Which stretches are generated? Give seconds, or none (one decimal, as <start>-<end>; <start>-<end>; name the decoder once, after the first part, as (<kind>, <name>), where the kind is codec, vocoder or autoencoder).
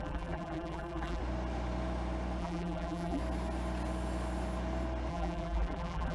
0.0-1.2 (vocoder, BigVGAN v2); 2.4-3.2; 5.1-6.1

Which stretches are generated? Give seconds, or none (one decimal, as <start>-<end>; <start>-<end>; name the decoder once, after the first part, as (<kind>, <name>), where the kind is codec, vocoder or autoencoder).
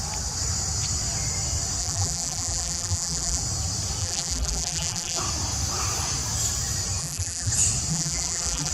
1.8-3.4 (vocoder, BigVGAN v2); 4.0-5.2; 7.0-7.5; 7.9-8.7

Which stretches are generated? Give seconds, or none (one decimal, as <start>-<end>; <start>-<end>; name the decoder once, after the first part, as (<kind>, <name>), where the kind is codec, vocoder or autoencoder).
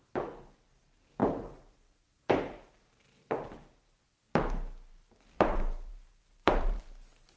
4.9-6.8 (vocoder, BigVGAN v2)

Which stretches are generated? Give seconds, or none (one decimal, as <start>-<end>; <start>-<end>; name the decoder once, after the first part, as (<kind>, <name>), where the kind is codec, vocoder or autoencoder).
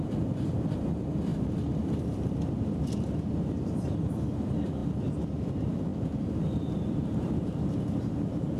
0.0-4.8 (vocoder, BigVGAN v2); 5.5-5.9; 6.5-8.6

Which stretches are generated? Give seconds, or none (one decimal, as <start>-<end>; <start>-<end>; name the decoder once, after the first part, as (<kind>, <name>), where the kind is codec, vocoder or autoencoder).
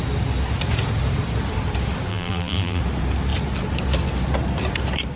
2.1-2.8 (vocoder, BigVGAN v2)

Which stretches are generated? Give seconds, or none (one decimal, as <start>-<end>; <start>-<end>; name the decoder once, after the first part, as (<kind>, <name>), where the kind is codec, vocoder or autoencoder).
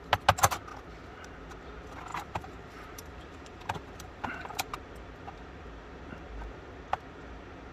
2.1-4.7 (vocoder, BigVGAN v2)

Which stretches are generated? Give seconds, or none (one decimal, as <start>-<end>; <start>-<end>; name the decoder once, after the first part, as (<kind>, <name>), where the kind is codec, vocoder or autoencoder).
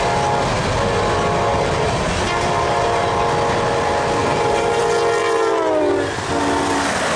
1.5-3.2 (vocoder, BigVGAN v2); 4.2-4.8; 5.2-5.8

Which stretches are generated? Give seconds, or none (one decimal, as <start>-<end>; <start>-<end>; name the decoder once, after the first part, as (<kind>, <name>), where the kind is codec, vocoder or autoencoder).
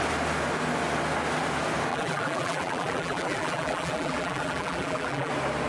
1.9-5.3 (vocoder, BigVGAN v2)